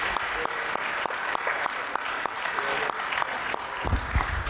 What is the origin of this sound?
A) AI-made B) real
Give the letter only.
B